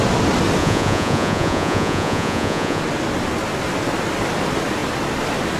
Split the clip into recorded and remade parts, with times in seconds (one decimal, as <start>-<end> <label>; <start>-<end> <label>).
0.0-0.6 recorded; 0.6-2.8 remade; 2.8-5.6 recorded